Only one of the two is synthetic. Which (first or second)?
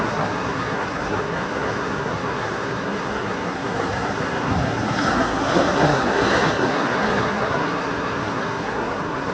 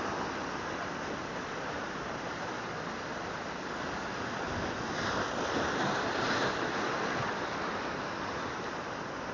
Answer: first